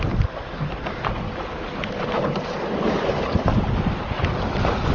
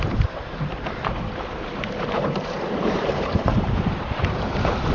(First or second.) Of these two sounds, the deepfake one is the second